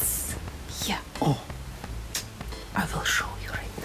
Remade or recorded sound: recorded